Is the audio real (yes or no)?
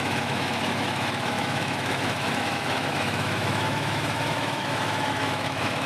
no